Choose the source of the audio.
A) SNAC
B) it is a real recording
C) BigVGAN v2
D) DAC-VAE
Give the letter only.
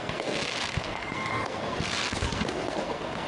A